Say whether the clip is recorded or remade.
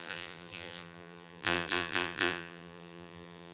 remade